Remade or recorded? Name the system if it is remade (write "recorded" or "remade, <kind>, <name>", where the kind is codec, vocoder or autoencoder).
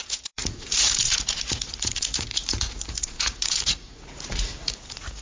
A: remade, vocoder, Vocos